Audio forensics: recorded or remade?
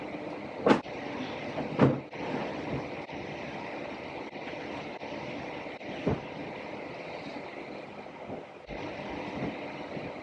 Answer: recorded